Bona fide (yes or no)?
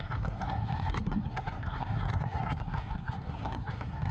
no